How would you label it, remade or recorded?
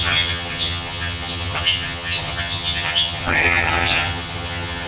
remade